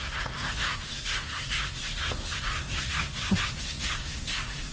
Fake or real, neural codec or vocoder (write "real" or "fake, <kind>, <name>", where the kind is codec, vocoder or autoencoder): fake, codec, SNAC